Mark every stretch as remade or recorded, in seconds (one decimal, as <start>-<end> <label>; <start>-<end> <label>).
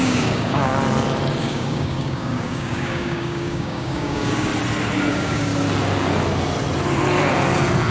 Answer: 0.0-0.7 remade; 0.7-1.4 recorded; 1.4-4.5 remade; 4.5-5.1 recorded; 5.1-5.5 remade; 5.5-7.9 recorded